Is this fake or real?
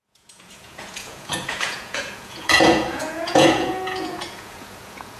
fake